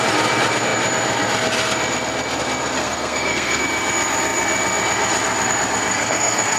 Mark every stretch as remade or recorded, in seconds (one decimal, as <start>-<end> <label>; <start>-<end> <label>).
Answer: 0.0-2.8 recorded; 2.8-3.6 remade; 3.6-5.9 recorded; 5.9-6.6 remade

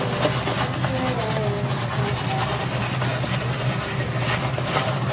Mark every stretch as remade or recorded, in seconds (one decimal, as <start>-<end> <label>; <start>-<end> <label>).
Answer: 0.0-5.1 recorded

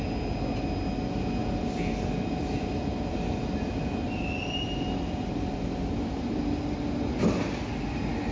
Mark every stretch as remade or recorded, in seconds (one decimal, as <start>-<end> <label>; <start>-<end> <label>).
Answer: 0.0-1.4 recorded; 1.4-6.4 remade; 6.4-8.3 recorded